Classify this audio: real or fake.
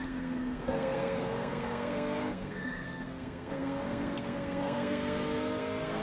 fake